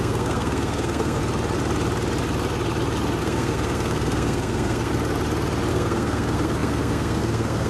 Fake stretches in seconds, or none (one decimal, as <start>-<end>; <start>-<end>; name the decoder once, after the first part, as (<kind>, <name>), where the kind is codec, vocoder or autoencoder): 0.0-1.2 (codec, SNAC); 3.2-4.9; 5.7-7.7